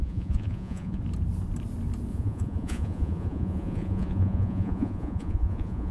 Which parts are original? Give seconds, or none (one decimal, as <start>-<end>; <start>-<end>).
1.0-2.1

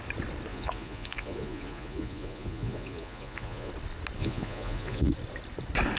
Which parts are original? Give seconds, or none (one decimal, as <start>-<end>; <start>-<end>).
0.0-0.5; 3.7-4.2; 5.1-6.0

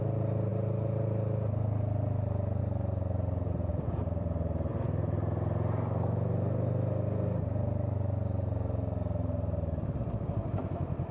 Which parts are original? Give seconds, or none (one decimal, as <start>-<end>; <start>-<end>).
0.0-3.7; 4.8-11.1

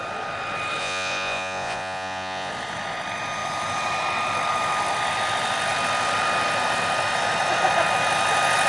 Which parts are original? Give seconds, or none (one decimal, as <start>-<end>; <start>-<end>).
0.0-0.8; 2.5-8.7

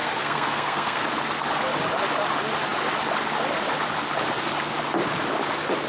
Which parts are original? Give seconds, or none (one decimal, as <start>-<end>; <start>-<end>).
1.0-5.9

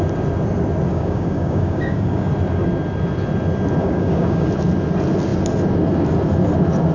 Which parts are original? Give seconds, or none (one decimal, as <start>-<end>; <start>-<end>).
0.0-0.9; 2.3-3.8; 4.5-6.9

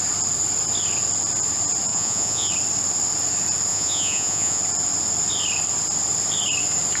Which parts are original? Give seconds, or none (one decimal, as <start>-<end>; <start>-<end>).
0.0-1.9; 2.5-3.7; 4.6-7.0